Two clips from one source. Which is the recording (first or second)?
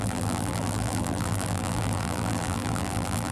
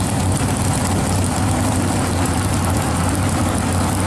second